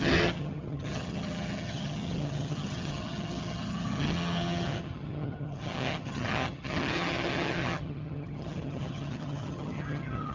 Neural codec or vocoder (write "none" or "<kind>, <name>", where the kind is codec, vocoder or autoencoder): vocoder, HiFi-GAN